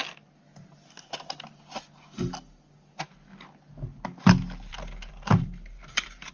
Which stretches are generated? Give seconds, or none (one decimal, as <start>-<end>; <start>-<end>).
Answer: 4.7-6.3